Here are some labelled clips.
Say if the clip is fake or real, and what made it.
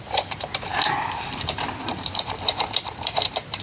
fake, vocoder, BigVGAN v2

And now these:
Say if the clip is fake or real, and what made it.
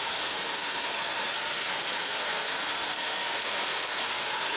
fake, codec, SNAC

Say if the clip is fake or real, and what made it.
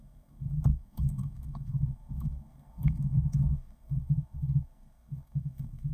fake, codec, SNAC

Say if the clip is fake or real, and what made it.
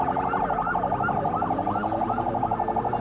real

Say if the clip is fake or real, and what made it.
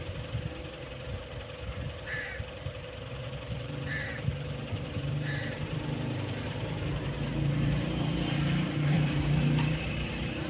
fake, vocoder, BigVGAN v2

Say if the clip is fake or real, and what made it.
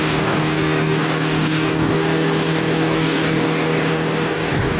fake, codec, DAC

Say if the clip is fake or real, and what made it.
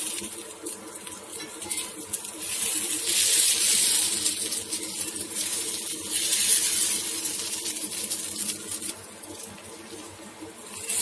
real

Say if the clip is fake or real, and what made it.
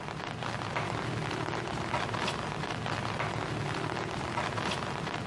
fake, vocoder, BigVGAN v2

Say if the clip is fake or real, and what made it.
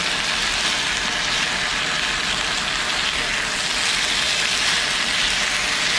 real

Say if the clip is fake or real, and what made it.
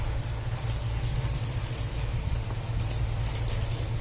real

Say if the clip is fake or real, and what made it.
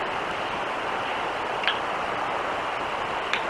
real